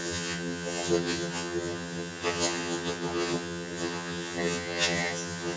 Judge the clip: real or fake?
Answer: fake